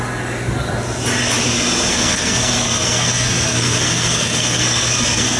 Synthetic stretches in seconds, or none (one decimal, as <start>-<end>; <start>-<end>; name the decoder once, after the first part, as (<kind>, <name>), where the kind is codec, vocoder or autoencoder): 1.9-5.4 (codec, SNAC)